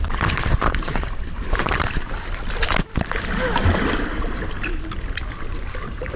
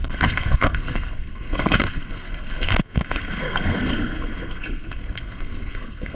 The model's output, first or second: second